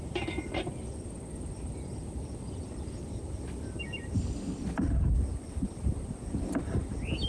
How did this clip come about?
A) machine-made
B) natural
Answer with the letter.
B